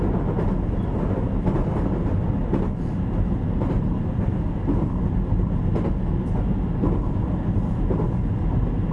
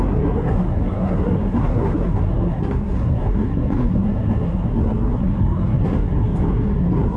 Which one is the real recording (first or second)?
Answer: first